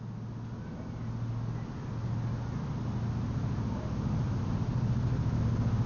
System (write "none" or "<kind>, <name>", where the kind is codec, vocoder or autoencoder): none